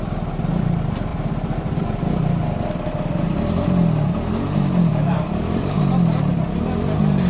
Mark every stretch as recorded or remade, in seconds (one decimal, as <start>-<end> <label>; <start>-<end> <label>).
0.0-4.9 recorded; 4.9-5.8 remade; 5.8-7.3 recorded